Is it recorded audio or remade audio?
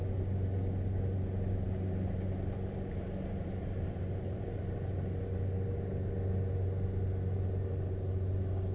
recorded